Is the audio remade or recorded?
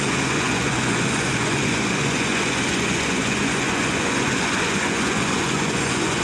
remade